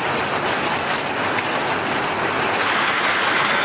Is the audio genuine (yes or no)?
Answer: yes